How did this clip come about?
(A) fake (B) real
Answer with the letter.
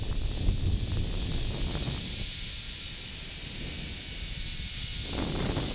B